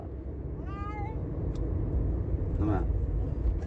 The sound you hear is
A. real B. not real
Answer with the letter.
A